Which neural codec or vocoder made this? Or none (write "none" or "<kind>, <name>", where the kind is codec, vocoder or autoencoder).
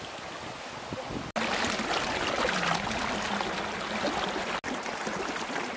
none